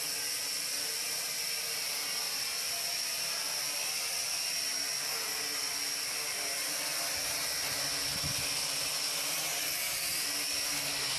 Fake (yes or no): no